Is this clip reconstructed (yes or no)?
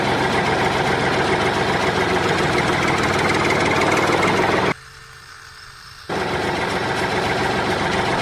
no